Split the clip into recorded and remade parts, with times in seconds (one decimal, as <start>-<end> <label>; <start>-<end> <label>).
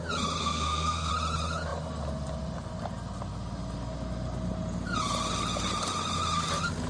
0.0-0.4 recorded; 0.4-1.1 remade; 1.1-6.9 recorded